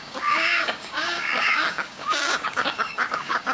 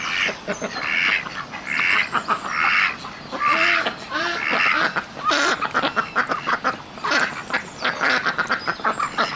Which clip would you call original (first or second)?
second